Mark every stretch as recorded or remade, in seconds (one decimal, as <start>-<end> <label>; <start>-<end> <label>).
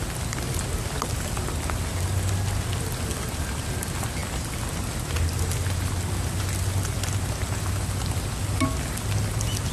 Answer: 0.0-9.7 recorded